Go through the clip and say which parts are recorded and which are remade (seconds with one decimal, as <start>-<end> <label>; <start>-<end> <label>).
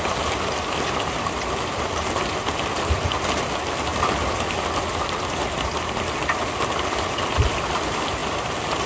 0.0-8.9 recorded